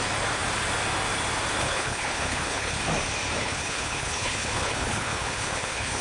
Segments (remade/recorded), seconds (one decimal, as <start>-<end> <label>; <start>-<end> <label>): 0.0-1.6 recorded; 1.6-2.8 remade; 2.8-3.4 recorded; 3.4-6.0 remade